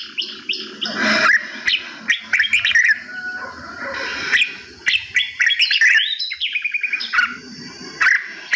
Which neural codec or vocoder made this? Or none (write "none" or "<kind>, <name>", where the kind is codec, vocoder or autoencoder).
none